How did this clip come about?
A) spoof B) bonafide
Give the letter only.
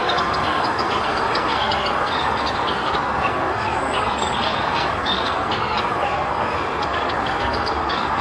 A